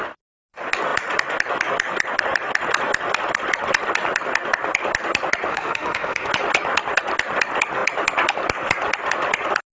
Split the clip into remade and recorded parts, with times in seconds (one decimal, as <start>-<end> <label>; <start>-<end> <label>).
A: 0.0-5.5 recorded; 5.5-6.3 remade; 6.3-9.7 recorded